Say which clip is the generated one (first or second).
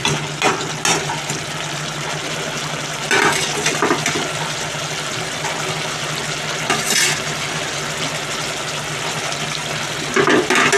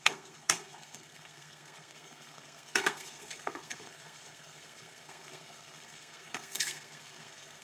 second